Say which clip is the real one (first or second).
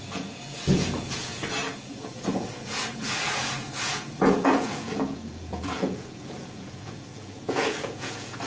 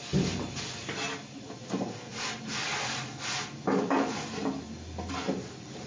second